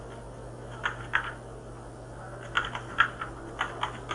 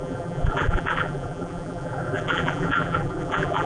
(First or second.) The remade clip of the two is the second